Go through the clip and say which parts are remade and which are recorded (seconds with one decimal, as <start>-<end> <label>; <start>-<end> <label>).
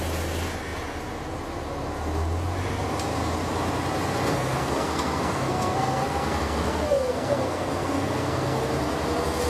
0.0-4.3 recorded; 4.3-8.7 remade; 8.7-9.5 recorded